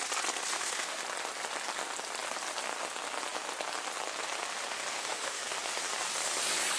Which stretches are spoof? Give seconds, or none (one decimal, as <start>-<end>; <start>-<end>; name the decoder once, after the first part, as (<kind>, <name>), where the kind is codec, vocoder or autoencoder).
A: 0.5-1.0 (autoencoder, DAC-VAE); 4.9-5.4